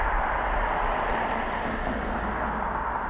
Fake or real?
real